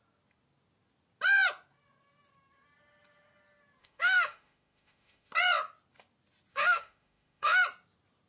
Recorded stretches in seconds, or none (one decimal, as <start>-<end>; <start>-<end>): 0.0-3.8; 5.3-6.5; 7.6-8.3